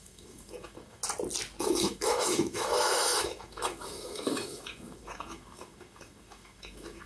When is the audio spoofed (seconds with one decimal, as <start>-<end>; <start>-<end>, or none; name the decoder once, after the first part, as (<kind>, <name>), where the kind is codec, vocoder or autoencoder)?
0.0-1.0 (autoencoder, DAC-VAE); 1.6-7.1